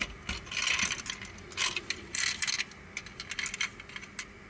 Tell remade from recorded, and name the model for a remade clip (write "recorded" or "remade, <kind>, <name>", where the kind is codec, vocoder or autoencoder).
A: recorded